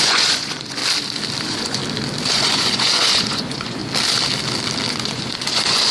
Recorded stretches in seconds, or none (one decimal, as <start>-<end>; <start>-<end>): 0.8-1.4; 1.8-2.3; 3.8-4.9